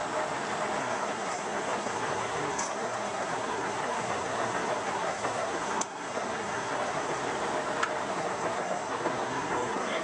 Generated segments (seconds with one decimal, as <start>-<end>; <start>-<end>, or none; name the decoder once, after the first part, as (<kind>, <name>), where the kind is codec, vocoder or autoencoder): 0.8-7.2 (codec, SNAC); 8.1-10.0